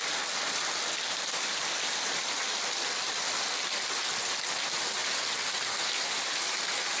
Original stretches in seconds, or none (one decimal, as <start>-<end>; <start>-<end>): 0.0-7.0